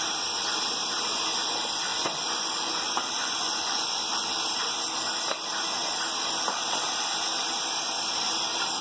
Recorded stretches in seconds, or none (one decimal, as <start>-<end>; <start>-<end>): 0.0-1.9; 2.8-3.2; 4.0-8.8